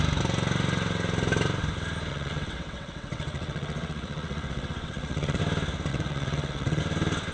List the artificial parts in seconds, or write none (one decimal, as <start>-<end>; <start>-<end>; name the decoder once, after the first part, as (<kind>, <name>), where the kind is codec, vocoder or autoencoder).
2.1-5.4 (vocoder, WaveNeXt); 5.9-6.8

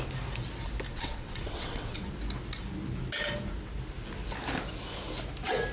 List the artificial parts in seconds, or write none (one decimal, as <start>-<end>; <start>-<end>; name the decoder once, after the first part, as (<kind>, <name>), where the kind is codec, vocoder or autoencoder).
0.9-2.1 (vocoder, WaveNeXt)

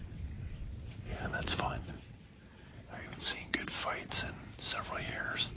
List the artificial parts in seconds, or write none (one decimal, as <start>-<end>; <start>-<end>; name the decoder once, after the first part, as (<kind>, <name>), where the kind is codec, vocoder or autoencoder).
0.0-1.1 (vocoder, WaveNeXt); 1.7-3.7; 5.0-5.6